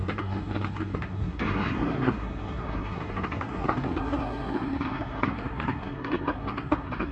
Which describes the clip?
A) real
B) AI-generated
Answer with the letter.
B